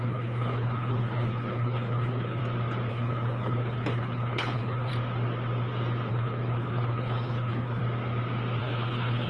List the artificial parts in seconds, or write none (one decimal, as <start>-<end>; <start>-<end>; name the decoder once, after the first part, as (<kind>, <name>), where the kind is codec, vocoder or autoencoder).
0.0-2.4 (codec, HILCodec); 2.9-4.9; 6.1-7.8; 8.6-9.3